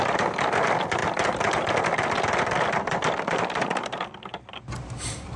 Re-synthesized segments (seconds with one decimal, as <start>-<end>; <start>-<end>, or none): none